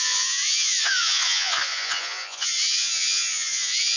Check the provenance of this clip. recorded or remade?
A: remade